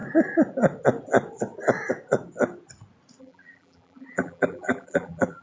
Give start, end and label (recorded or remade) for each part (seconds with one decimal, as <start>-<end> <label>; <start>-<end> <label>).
0.0-3.2 recorded; 3.2-5.4 remade